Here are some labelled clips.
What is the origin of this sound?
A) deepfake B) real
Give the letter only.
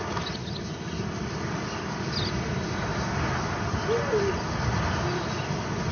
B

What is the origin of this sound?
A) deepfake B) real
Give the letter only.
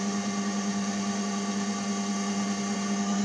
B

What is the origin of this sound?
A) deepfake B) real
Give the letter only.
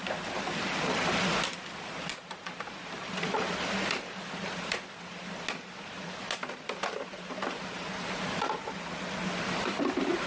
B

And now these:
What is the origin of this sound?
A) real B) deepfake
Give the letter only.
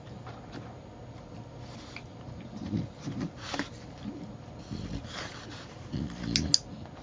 A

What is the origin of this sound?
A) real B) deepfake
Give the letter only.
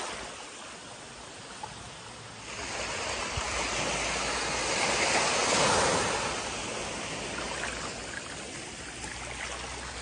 A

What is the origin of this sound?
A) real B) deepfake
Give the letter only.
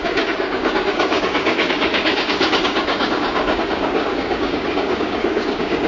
B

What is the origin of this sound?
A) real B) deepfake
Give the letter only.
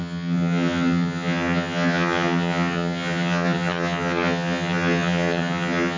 B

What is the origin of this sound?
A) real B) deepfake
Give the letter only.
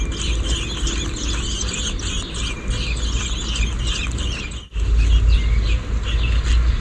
A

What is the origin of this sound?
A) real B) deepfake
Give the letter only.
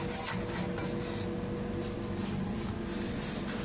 A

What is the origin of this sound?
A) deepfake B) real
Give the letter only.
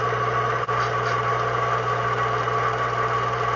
B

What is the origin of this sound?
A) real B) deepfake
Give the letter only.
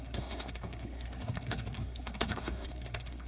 B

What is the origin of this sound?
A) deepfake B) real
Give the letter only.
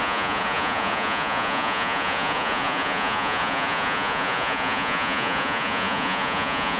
A